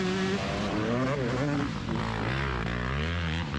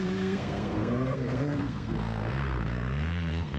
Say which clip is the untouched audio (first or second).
first